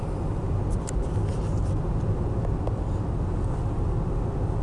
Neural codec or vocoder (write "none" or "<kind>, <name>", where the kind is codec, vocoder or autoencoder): none